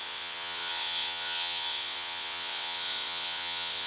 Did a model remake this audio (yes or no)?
yes